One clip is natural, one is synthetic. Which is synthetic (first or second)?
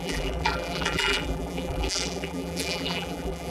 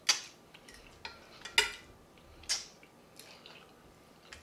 first